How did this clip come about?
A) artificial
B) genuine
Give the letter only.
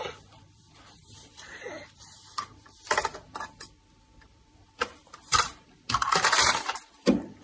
A